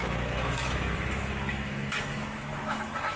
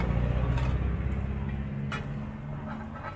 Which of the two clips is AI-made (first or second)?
first